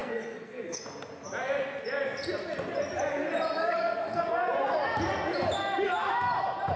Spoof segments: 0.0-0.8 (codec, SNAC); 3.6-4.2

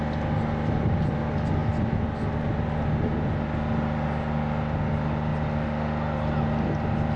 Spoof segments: none

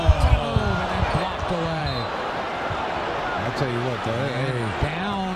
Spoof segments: none

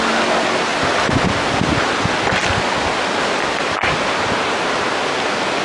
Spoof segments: none

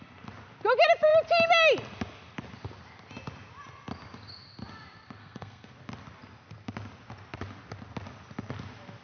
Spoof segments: 5.2-5.7 (codec, SNAC)

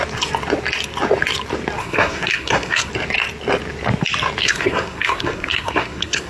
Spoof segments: 1.8-2.9 (codec, SNAC); 4.4-6.3

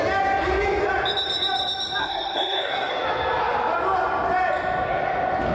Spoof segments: 2.0-2.9 (codec, SNAC)